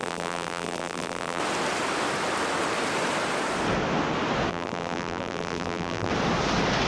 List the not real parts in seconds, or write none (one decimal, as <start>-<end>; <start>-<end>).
0.0-1.4; 4.5-6.1